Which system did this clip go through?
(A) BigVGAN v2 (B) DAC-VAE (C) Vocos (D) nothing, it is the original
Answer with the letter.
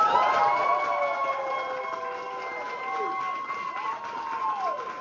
D